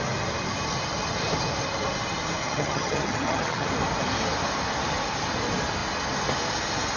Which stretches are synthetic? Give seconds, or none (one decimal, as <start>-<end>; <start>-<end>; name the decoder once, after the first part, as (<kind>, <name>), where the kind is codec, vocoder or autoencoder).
2.4-3.7 (vocoder, HiFi-GAN)